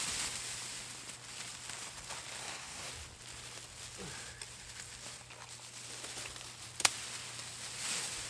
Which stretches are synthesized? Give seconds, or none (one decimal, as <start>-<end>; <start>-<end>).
2.4-2.9